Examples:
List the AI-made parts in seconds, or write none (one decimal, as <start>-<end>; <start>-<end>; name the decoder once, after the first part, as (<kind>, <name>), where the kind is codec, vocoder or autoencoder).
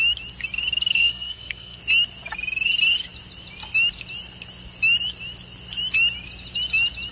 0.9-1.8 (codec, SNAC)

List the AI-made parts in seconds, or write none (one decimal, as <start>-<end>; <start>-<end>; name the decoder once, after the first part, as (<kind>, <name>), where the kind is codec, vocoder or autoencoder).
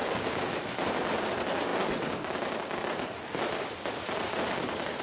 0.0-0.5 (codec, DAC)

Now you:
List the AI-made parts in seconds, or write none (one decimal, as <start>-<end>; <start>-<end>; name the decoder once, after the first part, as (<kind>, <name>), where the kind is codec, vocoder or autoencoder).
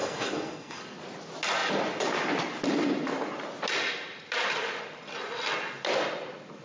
0.0-0.8 (codec, SNAC)